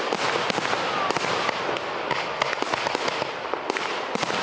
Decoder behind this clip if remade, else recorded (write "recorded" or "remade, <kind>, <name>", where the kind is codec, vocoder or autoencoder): recorded